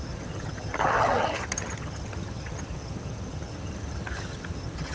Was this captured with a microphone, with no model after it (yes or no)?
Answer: no